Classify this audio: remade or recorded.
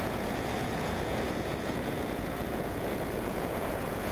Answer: remade